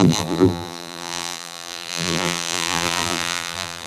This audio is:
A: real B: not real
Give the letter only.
B